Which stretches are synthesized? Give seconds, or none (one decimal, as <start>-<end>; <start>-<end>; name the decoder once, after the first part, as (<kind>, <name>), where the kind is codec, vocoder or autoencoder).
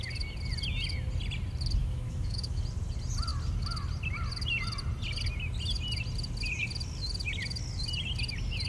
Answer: 1.8-2.6 (autoencoder, DAC-VAE)